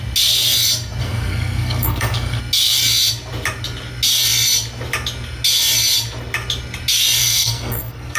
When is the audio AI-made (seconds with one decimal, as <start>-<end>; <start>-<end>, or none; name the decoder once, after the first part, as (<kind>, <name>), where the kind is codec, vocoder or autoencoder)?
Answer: 1.0-2.4 (codec, SNAC); 7.2-8.2